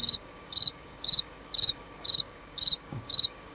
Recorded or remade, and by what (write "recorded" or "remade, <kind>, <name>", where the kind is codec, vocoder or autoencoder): remade, codec, DAC